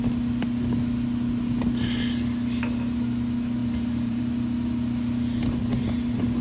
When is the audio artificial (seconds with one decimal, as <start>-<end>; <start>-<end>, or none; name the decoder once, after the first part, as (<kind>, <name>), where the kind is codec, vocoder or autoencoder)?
3.6-4.2 (vocoder, BigVGAN v2)